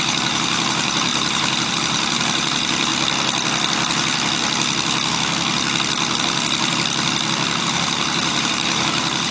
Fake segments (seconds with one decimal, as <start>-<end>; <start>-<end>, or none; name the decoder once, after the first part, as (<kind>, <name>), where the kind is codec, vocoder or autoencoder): 0.0-2.9 (vocoder, BigVGAN v2); 7.6-9.3